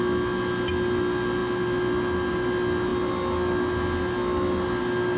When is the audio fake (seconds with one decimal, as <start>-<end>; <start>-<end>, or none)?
none